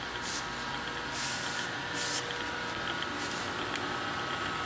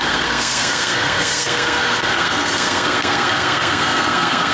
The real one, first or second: first